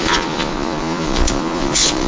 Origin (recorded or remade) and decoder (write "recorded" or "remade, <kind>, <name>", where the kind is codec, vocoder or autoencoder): remade, vocoder, Vocos